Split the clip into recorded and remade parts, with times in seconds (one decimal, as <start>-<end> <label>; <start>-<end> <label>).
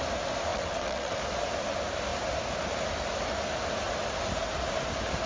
0.0-0.5 recorded; 0.5-1.2 remade; 1.2-5.3 recorded